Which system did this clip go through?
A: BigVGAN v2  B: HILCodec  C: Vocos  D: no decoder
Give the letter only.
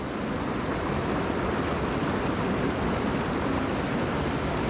D